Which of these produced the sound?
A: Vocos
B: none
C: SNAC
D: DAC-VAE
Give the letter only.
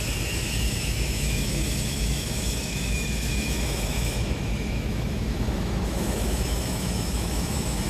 D